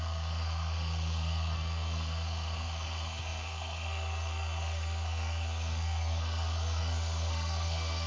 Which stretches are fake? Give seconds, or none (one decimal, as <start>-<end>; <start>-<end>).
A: 0.0-8.1